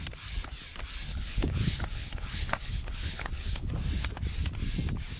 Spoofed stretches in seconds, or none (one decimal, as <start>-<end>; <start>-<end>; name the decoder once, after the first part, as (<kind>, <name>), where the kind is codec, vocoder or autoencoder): 1.1-3.7 (codec, HILCodec)

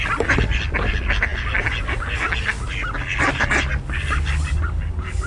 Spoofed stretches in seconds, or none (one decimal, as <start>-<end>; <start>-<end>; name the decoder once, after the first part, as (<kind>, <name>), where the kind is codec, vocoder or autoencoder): none

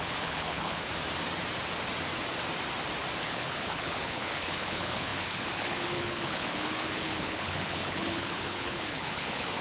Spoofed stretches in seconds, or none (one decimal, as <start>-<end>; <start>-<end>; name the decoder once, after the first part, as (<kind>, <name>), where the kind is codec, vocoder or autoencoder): 0.0-0.9 (codec, HILCodec); 3.2-9.6